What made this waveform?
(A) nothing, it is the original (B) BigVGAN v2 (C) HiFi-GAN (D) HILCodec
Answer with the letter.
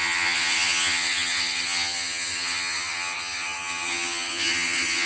C